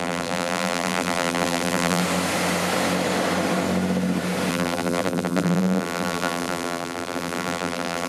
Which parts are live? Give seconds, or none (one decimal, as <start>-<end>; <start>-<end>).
2.0-4.5